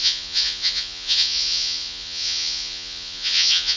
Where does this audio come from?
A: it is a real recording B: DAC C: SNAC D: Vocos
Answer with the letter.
D